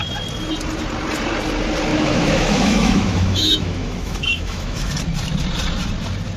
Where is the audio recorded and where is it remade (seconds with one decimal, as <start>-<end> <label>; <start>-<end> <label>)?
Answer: 0.0-1.9 recorded; 1.9-4.9 remade; 4.9-6.4 recorded